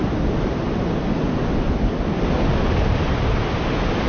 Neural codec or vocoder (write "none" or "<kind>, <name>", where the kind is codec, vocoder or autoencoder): none